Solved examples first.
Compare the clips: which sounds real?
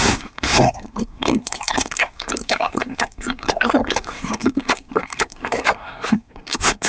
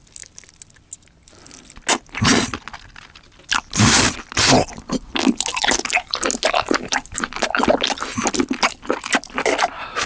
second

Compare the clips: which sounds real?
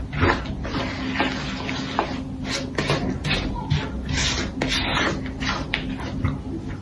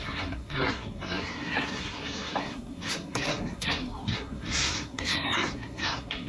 first